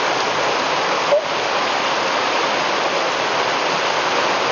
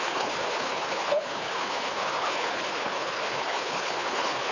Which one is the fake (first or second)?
second